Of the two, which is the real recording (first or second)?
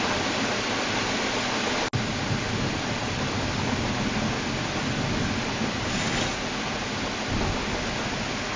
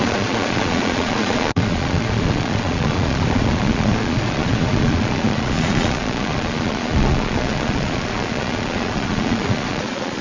first